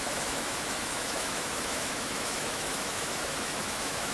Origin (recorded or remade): remade